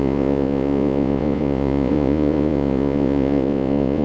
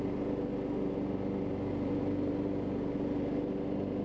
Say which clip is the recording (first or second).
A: second